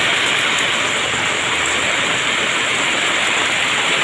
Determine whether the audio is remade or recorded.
recorded